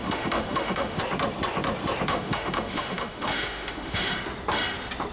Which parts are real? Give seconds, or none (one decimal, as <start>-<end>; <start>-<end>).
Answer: 1.0-2.1; 4.1-5.1